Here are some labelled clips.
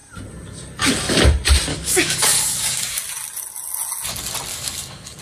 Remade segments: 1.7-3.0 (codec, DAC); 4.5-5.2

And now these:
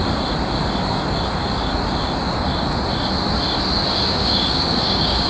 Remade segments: 4.1-5.3 (codec, DAC)

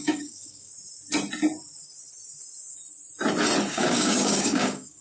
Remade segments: 0.0-0.7 (codec, DAC); 3.7-5.0